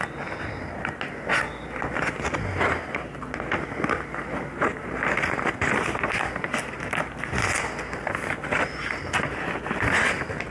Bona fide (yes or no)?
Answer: yes